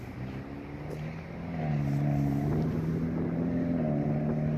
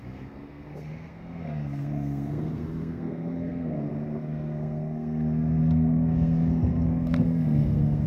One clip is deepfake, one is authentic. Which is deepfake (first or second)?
second